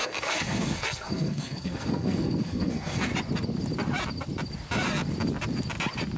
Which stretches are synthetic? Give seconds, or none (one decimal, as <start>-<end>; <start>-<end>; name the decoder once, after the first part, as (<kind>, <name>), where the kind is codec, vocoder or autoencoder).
0.0-3.1 (codec, SNAC)